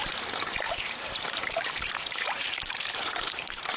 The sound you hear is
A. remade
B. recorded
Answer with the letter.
A